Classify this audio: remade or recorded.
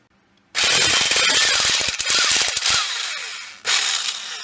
recorded